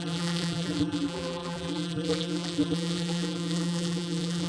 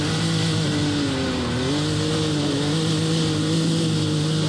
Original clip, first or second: second